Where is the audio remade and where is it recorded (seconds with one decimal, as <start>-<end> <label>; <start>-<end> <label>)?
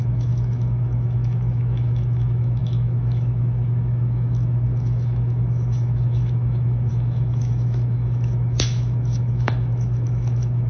0.0-10.7 remade